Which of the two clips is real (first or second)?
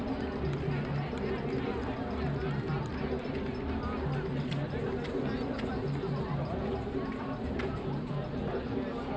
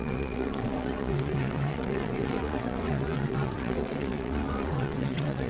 first